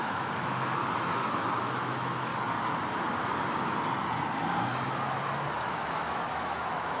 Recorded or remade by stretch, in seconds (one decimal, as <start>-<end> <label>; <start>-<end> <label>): 0.0-0.8 remade; 0.8-1.6 recorded; 1.6-2.3 remade; 2.3-5.6 recorded; 5.6-7.0 remade